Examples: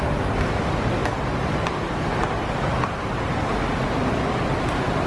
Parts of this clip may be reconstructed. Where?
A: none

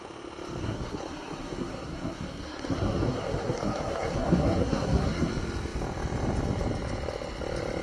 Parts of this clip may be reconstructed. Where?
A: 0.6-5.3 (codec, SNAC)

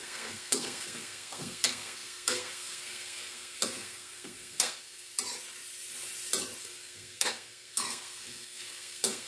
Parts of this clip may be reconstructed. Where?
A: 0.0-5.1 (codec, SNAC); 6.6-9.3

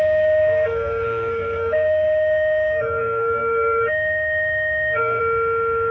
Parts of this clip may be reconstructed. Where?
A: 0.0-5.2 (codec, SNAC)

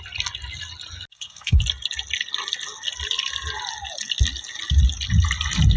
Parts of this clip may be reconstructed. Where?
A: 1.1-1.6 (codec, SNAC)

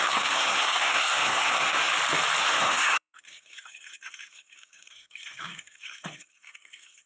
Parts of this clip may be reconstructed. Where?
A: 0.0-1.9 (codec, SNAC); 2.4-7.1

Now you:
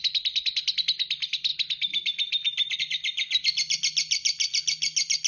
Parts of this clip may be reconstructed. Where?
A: none

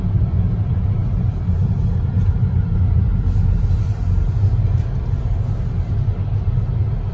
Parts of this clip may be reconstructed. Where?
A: none